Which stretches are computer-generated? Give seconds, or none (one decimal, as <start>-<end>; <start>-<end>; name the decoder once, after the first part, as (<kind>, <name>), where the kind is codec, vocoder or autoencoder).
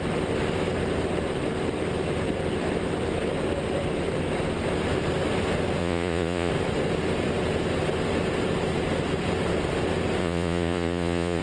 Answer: 5.8-6.5 (vocoder, Vocos); 10.2-11.4